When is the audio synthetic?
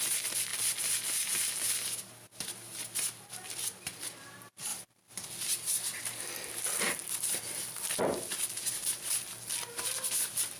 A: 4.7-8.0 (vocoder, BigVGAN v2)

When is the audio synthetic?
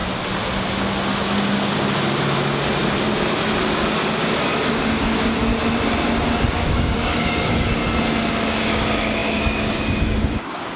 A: 4.7-5.5 (codec, DAC); 6.5-7.8; 8.3-10.8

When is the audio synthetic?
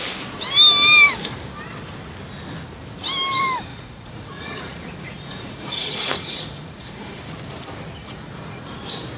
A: 3.7-7.2 (vocoder, Vocos); 8.0-8.7